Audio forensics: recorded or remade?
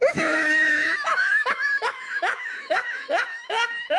remade